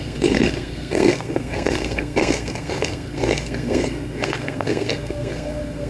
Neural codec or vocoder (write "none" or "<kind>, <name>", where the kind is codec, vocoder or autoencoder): codec, SNAC